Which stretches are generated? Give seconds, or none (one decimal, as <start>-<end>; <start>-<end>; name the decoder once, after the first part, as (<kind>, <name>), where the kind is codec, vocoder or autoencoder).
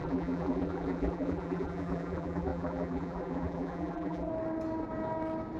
0.0-4.3 (vocoder, BigVGAN v2)